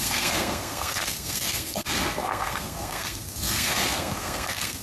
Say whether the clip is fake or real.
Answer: fake